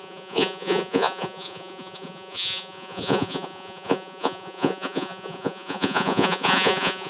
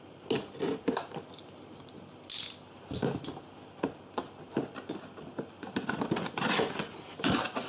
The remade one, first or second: first